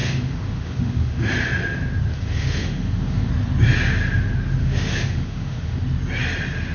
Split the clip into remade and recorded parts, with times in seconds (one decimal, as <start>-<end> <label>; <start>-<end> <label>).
0.0-1.3 remade; 1.3-2.1 recorded; 2.1-3.3 remade; 3.3-4.6 recorded; 4.6-5.8 remade; 5.8-6.7 recorded